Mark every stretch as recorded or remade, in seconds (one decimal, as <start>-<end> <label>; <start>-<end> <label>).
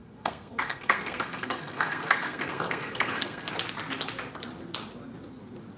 0.0-3.5 remade; 3.5-5.8 recorded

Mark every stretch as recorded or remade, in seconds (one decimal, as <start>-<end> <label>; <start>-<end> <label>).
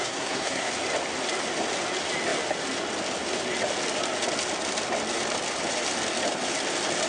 0.0-0.7 remade; 0.7-7.1 recorded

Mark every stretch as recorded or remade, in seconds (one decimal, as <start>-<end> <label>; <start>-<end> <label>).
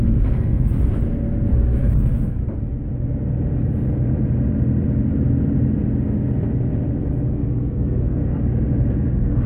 0.0-0.7 remade; 0.7-1.5 recorded; 1.5-2.4 remade; 2.4-7.3 recorded; 7.3-8.2 remade; 8.2-8.9 recorded; 8.9-9.5 remade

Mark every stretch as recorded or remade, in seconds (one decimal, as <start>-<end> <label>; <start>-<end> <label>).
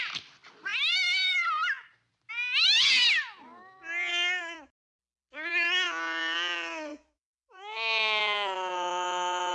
0.0-4.1 recorded; 4.1-4.9 remade; 4.9-6.9 recorded; 6.9-9.5 remade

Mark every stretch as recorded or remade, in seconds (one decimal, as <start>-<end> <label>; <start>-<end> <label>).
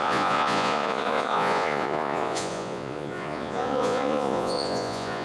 0.0-5.2 remade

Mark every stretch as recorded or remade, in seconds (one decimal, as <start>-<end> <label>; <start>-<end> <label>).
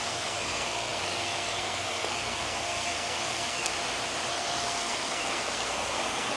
0.0-3.7 remade; 3.7-4.3 recorded; 4.3-6.4 remade